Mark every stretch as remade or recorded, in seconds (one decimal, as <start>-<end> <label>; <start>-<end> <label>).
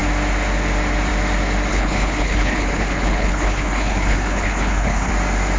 0.0-1.7 recorded; 1.7-5.1 remade; 5.1-5.6 recorded